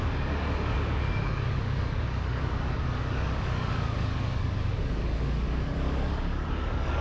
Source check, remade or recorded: remade